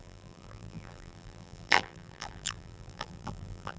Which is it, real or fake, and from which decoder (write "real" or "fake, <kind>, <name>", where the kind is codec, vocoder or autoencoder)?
fake, vocoder, BigVGAN v2